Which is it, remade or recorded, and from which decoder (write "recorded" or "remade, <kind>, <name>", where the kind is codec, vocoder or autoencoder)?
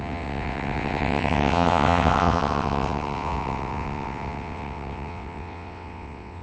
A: remade, vocoder, WaveNeXt